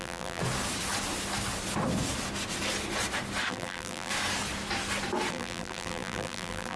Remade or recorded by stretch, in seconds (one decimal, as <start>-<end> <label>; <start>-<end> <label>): 0.0-0.4 remade; 0.4-3.5 recorded; 3.5-4.1 remade; 4.1-5.3 recorded; 5.3-6.8 remade